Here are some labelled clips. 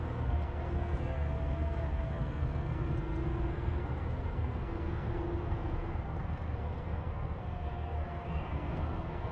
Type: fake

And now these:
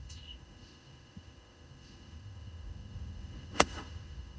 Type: fake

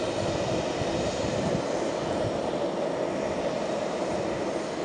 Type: real